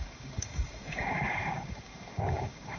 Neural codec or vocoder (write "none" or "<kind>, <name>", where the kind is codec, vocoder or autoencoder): codec, DAC